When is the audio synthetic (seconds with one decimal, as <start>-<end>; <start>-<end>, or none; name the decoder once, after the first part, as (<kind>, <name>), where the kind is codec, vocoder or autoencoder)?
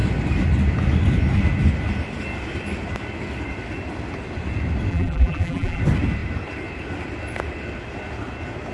4.9-5.8 (vocoder, BigVGAN v2)